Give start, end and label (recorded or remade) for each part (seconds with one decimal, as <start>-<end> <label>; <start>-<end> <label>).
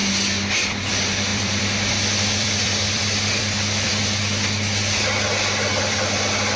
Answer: 0.0-1.3 recorded; 1.3-4.0 remade; 4.0-6.6 recorded